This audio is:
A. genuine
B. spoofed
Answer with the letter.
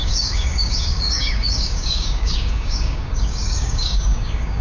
B